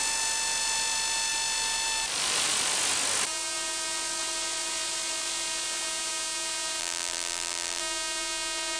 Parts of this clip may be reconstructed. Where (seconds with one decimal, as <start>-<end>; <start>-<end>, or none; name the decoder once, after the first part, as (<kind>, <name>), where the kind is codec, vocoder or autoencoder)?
6.8-7.8 (vocoder, BigVGAN v2)